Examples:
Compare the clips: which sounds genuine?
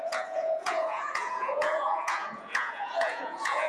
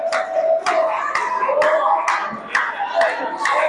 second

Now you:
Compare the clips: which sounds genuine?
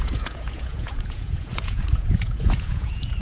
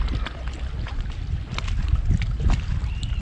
second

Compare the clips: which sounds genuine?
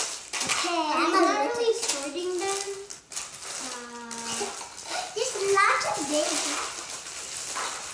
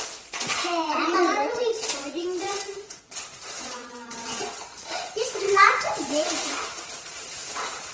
first